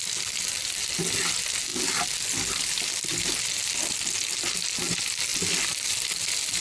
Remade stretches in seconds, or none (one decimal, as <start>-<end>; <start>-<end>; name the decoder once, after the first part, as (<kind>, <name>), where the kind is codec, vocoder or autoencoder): none